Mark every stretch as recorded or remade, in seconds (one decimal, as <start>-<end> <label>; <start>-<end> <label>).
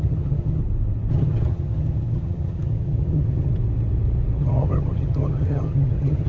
0.0-0.6 remade; 0.6-1.1 recorded; 1.1-3.5 remade; 3.5-4.4 recorded; 4.4-6.3 remade